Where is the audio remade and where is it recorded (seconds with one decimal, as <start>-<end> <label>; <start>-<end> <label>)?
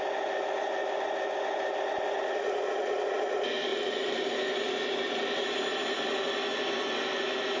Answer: 0.0-7.6 recorded